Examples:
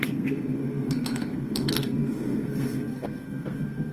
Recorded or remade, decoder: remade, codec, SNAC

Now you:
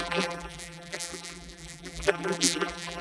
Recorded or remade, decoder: remade, vocoder, BigVGAN v2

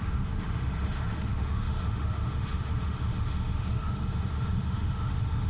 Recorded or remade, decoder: remade, autoencoder, DAC-VAE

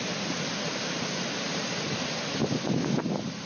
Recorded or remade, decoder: recorded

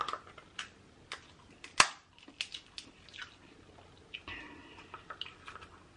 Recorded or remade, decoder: recorded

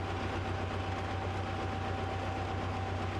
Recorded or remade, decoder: recorded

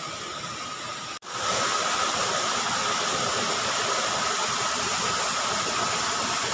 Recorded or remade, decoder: recorded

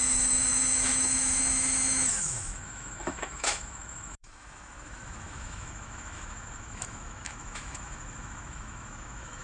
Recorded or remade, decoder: remade, autoencoder, DAC-VAE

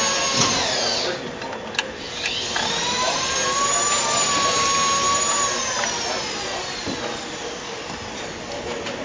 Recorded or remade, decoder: recorded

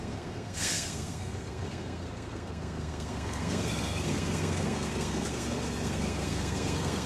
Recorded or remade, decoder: remade, codec, SNAC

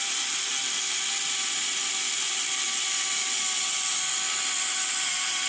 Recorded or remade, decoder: recorded